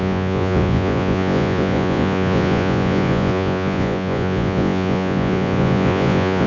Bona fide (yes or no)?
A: no